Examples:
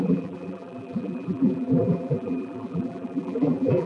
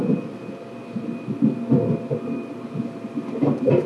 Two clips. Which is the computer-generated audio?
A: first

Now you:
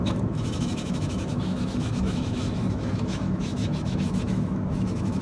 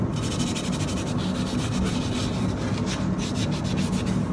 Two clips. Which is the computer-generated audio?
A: first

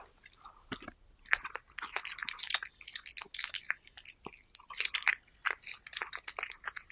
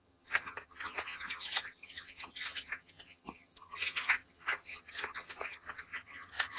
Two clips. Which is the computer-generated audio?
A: second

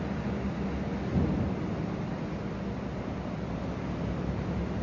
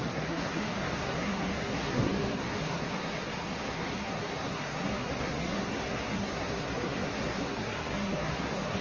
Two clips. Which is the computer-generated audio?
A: second